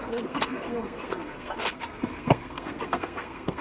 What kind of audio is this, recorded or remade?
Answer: remade